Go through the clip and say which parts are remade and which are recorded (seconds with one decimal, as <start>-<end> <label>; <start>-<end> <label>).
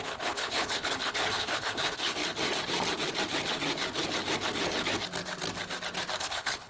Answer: 0.0-2.2 remade; 2.2-6.2 recorded; 6.2-6.7 remade